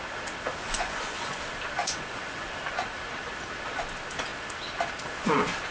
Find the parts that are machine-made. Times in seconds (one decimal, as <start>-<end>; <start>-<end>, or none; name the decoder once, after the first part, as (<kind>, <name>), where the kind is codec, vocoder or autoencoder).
0.6-1.4 (vocoder, Vocos); 1.8-2.5